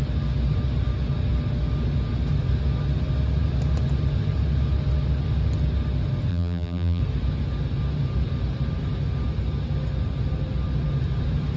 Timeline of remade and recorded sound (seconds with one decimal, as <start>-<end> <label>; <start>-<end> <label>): 0.0-6.3 recorded; 6.3-7.0 remade; 7.0-11.6 recorded